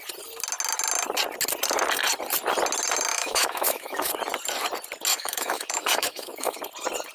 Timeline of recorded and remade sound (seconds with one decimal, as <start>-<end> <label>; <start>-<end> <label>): 0.0-3.1 recorded; 3.1-4.1 remade; 4.1-5.1 recorded; 5.1-6.6 remade; 6.6-7.1 recorded